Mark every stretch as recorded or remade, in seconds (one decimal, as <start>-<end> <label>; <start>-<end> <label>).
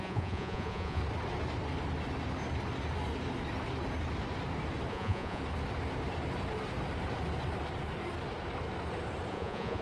0.0-1.0 remade; 1.0-4.9 recorded; 4.9-5.4 remade; 5.4-9.3 recorded; 9.3-9.8 remade